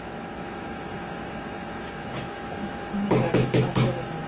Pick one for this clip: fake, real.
fake